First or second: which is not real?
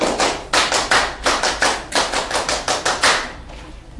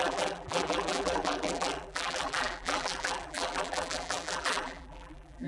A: second